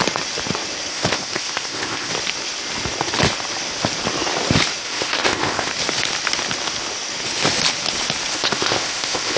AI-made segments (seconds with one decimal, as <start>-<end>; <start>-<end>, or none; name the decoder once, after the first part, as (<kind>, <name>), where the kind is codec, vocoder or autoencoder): 0.9-2.1 (codec, ZipCodec); 4.8-5.7; 8.3-9.4